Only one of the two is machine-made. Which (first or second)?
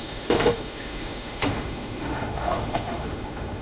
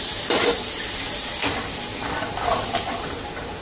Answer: first